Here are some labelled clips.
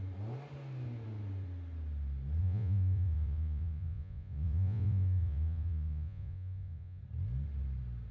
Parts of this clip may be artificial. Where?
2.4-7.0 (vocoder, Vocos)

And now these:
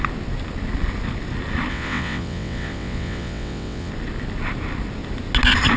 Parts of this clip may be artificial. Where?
1.7-3.9 (vocoder, WaveNeXt)

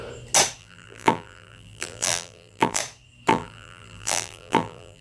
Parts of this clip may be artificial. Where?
0.6-2.8 (vocoder, BigVGAN v2); 3.3-5.0

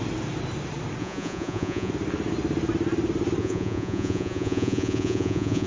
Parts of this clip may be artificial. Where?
1.0-1.9 (vocoder, Vocos); 3.4-5.7

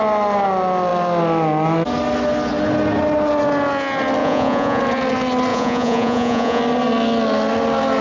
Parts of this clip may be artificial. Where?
4.2-4.8 (vocoder, Vocos); 5.5-6.6

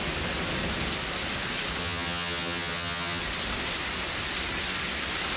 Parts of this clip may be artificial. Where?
1.8-3.2 (vocoder, HiFi-GAN)

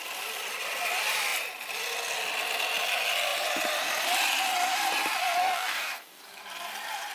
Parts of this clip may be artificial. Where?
5.4-6.2 (codec, DAC)